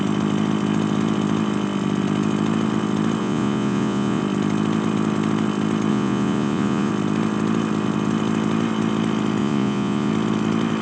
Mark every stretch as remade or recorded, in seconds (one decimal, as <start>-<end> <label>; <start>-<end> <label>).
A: 0.0-3.2 recorded; 3.2-4.2 remade; 4.2-5.9 recorded; 5.9-6.9 remade; 6.9-9.4 recorded; 9.4-10.1 remade; 10.1-10.8 recorded